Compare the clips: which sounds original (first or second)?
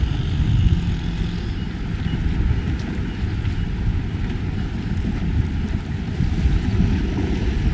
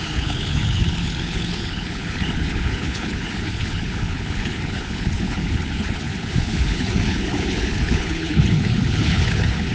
first